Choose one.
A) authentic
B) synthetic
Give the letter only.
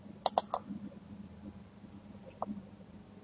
A